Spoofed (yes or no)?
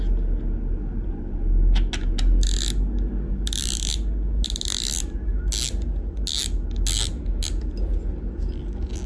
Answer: no